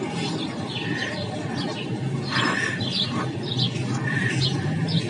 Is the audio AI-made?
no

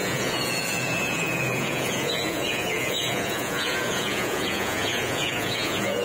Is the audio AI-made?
yes